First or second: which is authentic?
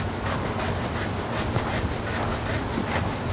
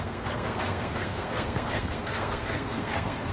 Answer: first